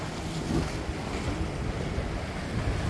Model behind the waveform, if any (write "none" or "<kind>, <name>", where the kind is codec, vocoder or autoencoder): none